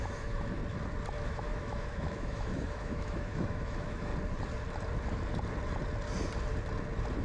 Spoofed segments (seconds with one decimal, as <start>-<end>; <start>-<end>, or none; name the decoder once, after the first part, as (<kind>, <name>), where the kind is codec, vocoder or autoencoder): 0.0-0.6 (autoencoder, DAC-VAE); 1.2-4.1